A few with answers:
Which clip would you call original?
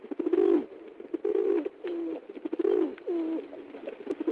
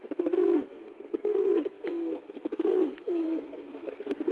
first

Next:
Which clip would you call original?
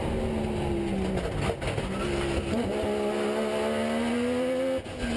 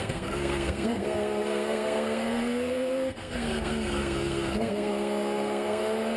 first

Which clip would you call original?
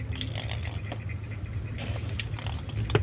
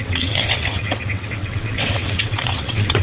first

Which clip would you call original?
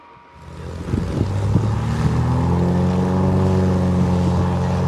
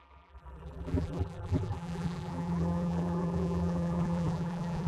first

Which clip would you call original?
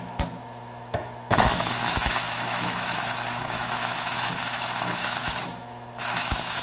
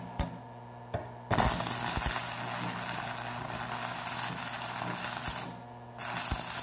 second